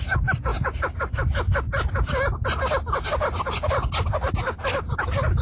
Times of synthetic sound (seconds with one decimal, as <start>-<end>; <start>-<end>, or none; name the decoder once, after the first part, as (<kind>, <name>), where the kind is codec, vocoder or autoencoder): none